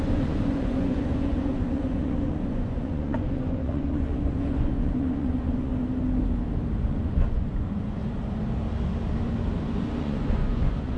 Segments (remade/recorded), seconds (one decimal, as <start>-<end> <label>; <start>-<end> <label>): 0.0-5.7 remade; 5.7-6.8 recorded; 6.8-8.0 remade; 8.0-10.0 recorded; 10.0-11.0 remade